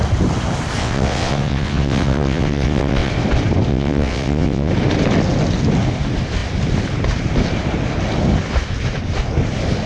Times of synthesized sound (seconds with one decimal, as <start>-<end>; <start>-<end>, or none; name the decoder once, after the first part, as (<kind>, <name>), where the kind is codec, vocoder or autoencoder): 0.8-3.1 (vocoder, WaveNeXt); 3.7-4.7